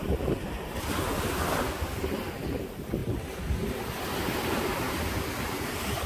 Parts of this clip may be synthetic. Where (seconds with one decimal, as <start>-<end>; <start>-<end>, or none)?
none